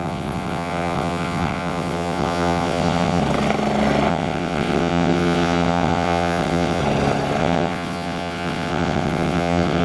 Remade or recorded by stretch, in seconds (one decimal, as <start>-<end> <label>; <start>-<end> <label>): 0.0-3.2 remade; 3.2-4.1 recorded; 4.1-6.8 remade; 6.8-7.4 recorded; 7.4-9.8 remade